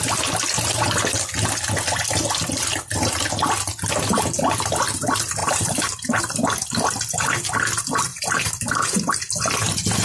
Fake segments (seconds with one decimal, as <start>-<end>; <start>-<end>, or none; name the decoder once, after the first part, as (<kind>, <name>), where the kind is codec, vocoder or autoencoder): 5.4-6.2 (vocoder, BigVGAN v2); 8.1-9.0